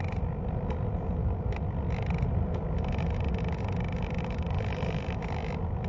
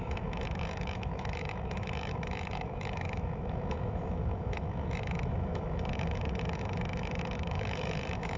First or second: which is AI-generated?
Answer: second